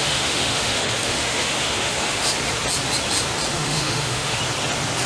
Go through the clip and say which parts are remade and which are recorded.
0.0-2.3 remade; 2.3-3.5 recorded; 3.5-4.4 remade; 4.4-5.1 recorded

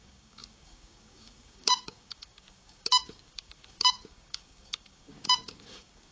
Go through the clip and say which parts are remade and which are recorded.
0.0-6.1 remade